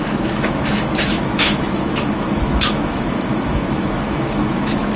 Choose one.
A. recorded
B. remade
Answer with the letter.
B